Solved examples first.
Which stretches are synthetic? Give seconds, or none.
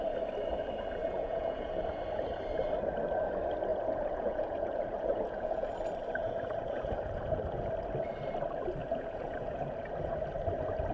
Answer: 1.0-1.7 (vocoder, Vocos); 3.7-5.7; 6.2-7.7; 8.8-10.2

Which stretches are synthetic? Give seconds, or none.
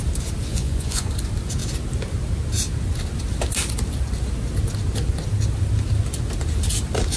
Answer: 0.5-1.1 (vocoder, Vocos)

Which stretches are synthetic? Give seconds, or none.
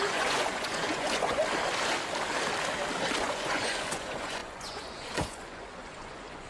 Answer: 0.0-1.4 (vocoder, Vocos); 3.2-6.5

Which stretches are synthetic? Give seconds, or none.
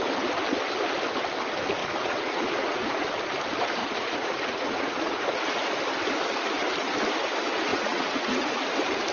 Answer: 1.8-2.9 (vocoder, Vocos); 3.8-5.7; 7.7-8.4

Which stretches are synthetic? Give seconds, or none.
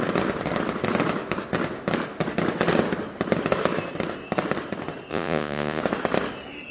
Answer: 5.1-5.8 (vocoder, Vocos)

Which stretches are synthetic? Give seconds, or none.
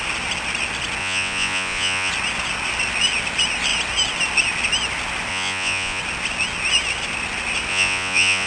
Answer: 1.0-2.1 (vocoder, Vocos); 5.3-6.0; 7.7-8.5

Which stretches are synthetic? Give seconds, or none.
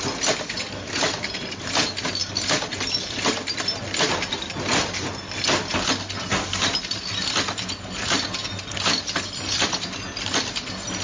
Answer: none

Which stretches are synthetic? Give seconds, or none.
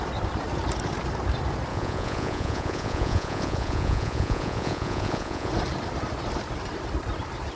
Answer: 1.7-5.5 (vocoder, Vocos)